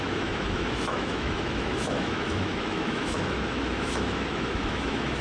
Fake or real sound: fake